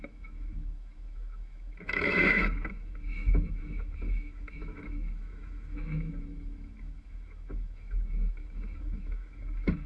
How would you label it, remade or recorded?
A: remade